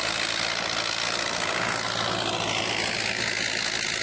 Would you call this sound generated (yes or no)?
no